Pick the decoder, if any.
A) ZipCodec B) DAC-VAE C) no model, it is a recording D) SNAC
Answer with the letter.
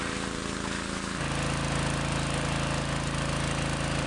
C